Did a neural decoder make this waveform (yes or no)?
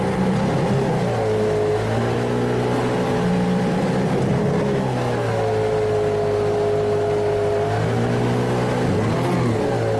no